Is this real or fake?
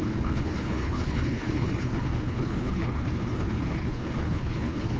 fake